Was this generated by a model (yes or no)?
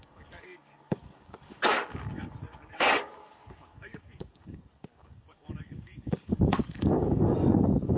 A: yes